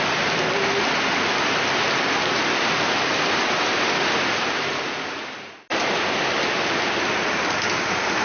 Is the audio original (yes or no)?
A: yes